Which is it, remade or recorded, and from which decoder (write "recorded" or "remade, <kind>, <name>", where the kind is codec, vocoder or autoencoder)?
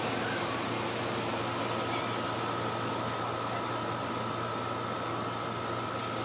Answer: recorded